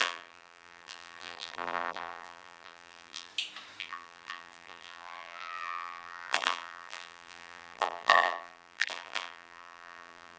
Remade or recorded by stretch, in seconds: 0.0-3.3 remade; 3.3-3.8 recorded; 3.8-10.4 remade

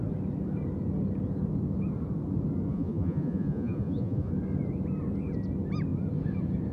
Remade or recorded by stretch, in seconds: 0.0-2.7 recorded; 2.7-4.3 remade; 4.3-6.7 recorded

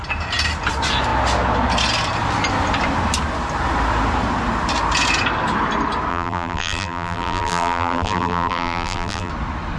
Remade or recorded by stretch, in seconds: 0.0-6.1 recorded; 6.1-9.3 remade; 9.3-9.8 recorded

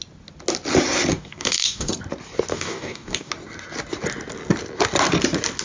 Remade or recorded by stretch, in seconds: 0.0-1.1 recorded; 1.1-1.9 remade; 1.9-2.5 recorded; 2.5-3.3 remade; 3.3-5.6 recorded

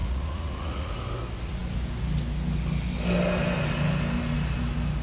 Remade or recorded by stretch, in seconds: 0.0-0.9 remade; 0.9-5.0 recorded

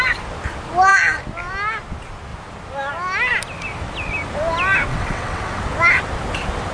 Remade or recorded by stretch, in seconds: 0.0-4.9 recorded; 4.9-5.6 remade; 5.6-6.7 recorded